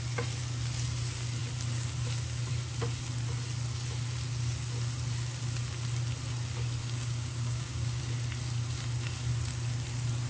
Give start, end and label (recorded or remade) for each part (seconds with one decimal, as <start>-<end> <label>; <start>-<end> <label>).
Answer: 0.0-6.8 recorded; 6.8-8.0 remade; 8.0-10.3 recorded